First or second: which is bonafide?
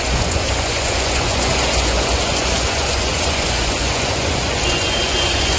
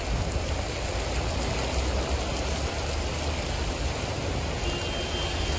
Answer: second